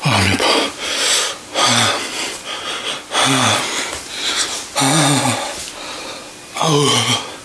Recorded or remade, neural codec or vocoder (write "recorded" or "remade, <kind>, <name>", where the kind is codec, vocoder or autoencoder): recorded